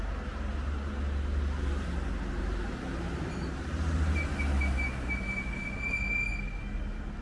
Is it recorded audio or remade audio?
recorded